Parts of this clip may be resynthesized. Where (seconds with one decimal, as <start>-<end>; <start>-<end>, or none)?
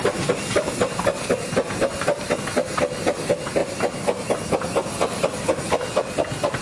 none